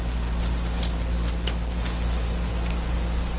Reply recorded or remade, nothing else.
recorded